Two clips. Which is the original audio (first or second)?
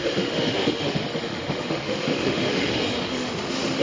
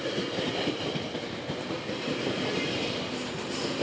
second